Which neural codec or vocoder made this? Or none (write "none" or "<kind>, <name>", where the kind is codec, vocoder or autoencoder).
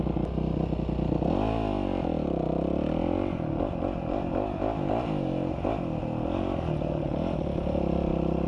none